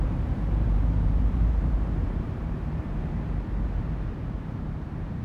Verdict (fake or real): fake